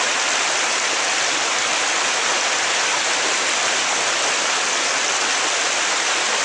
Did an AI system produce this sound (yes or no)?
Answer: no